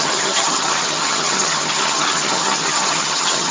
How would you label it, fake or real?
fake